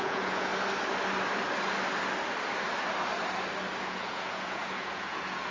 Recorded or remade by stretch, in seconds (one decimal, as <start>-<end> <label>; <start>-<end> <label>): 0.0-0.5 remade; 0.5-3.8 recorded; 3.8-5.5 remade